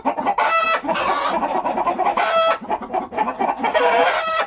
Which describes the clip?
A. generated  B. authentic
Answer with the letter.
B